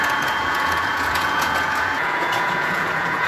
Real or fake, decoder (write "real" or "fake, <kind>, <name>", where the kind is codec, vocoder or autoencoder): fake, vocoder, Vocos